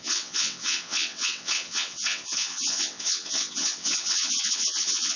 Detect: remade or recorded remade